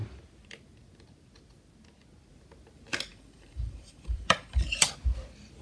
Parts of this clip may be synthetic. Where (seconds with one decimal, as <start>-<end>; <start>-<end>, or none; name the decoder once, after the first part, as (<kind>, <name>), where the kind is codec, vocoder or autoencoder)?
3.1-4.9 (vocoder, BigVGAN v2)